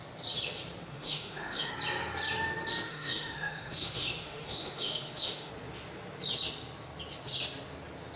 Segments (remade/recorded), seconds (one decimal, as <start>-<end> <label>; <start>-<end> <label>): 0.0-0.9 recorded; 0.9-1.7 remade; 1.7-2.9 recorded; 2.9-5.5 remade; 5.5-8.2 recorded